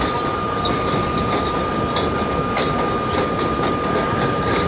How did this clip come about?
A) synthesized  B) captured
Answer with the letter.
B